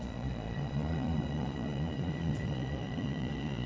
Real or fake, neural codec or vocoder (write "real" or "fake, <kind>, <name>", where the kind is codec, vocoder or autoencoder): fake, vocoder, Vocos